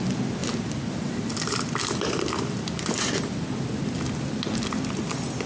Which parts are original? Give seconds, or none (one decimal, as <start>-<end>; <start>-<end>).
0.0-5.5